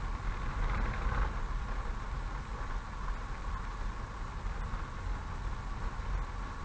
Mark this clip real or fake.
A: real